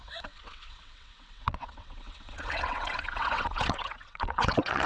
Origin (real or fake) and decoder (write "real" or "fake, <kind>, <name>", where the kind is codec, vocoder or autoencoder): fake, vocoder, WaveNeXt